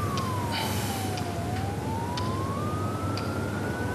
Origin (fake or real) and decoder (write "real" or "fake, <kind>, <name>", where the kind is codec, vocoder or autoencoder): real